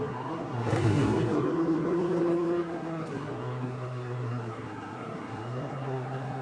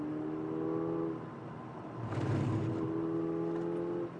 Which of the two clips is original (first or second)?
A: second